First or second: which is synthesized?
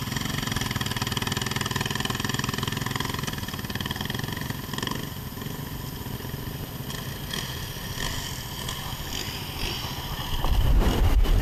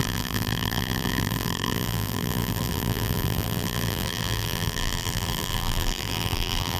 second